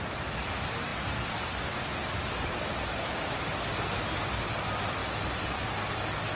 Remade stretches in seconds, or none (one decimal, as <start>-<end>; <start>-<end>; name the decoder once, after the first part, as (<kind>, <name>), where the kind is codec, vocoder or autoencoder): 5.0-5.6 (vocoder, BigVGAN v2)